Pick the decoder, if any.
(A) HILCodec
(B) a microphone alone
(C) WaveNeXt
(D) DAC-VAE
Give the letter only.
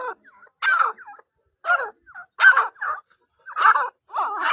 B